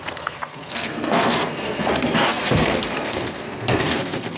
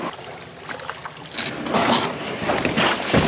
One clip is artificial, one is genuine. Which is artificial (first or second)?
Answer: first